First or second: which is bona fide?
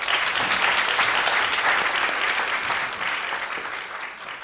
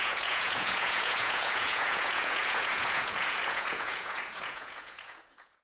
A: first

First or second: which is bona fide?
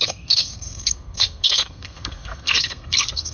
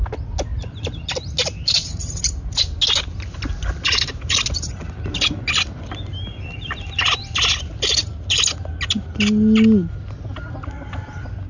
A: second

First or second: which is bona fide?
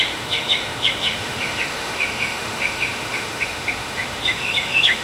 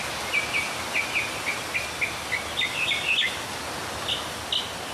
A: second